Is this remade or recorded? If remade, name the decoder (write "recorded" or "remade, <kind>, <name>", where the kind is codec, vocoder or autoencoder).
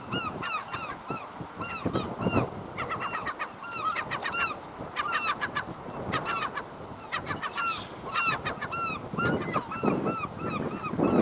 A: recorded